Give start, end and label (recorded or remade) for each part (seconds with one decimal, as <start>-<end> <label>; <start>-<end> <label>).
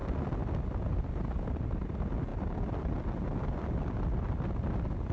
0.0-5.1 recorded